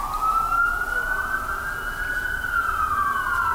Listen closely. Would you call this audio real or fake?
real